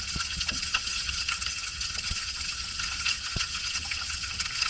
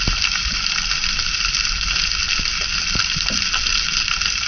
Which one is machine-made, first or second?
first